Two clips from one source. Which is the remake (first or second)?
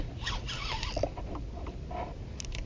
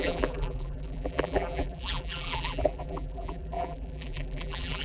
second